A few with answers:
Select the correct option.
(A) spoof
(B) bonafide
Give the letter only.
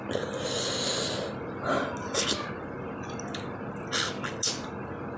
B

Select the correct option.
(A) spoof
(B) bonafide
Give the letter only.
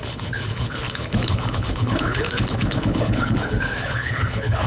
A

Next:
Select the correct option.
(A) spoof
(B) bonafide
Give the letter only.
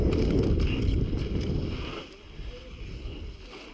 B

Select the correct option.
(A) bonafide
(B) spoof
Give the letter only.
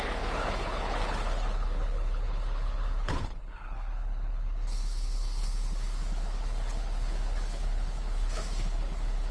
B